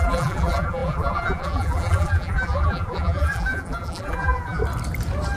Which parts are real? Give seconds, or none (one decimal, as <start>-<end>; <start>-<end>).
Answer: 4.6-5.4

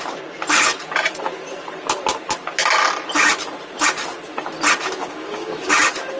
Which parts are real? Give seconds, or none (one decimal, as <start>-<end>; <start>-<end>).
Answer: 0.0-5.0; 5.7-6.2

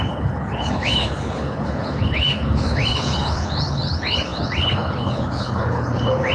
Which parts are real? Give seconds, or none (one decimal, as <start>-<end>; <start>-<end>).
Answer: none

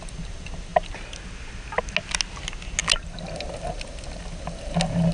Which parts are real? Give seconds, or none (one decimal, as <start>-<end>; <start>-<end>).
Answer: 0.0-5.1

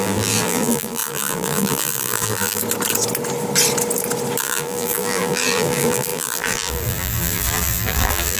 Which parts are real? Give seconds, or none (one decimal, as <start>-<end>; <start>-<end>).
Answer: 2.6-4.4

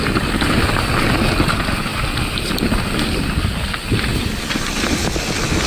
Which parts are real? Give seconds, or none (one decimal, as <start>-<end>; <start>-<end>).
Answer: 0.0-5.7

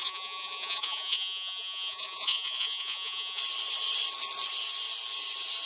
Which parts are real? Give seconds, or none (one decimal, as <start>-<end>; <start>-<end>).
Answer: 3.4-5.7